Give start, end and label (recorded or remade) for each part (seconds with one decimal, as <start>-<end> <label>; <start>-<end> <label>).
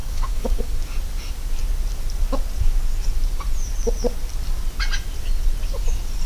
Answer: 0.0-0.6 remade; 0.6-6.3 recorded